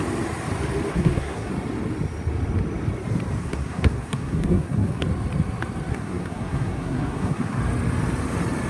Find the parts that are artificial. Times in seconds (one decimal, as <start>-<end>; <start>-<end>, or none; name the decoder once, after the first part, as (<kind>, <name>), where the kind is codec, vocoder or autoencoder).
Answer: 0.9-1.5 (codec, SNAC); 3.4-5.0; 5.9-7.6